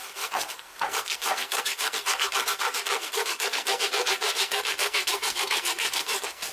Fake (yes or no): yes